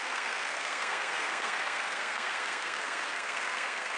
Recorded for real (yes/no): no